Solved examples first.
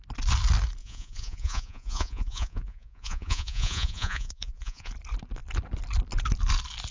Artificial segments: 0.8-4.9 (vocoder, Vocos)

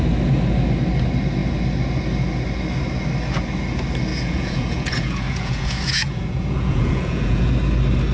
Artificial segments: 4.1-7.5 (vocoder, Vocos)

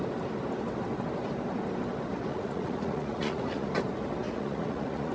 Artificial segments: 2.3-3.7 (vocoder, Vocos); 4.2-5.1

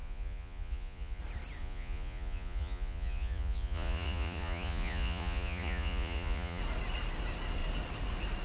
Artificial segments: 0.0-1.2 (vocoder, Vocos); 1.6-6.6

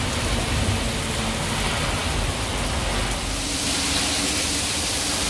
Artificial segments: none

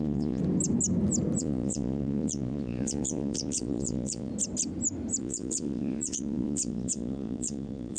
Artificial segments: 0.0-0.4 (vocoder, Vocos); 1.4-4.3; 5.2-8.0

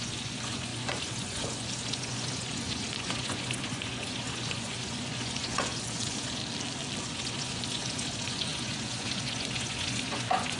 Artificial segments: 0.0-6.4 (vocoder, Vocos); 7.0-10.6

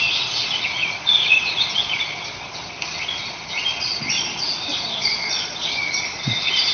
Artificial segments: 0.8-2.5 (vocoder, Vocos); 3.7-4.3; 4.7-5.8